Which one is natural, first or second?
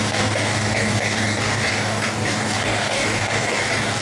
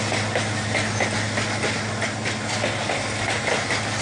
second